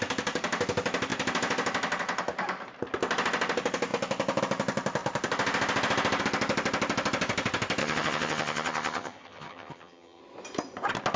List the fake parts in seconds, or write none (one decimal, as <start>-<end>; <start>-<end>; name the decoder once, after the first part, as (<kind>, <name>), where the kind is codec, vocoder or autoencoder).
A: 7.8-10.2 (vocoder, HiFi-GAN)